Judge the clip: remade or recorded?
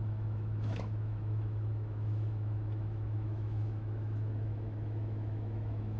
remade